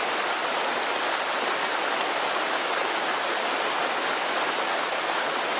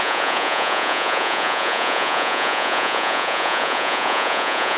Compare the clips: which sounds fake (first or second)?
second